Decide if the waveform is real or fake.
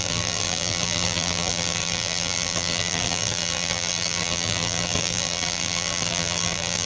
fake